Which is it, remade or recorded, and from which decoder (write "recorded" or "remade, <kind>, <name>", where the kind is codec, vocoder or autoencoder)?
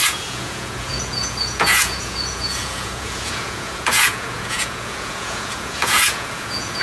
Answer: remade, vocoder, Vocos